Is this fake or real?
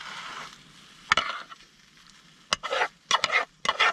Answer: real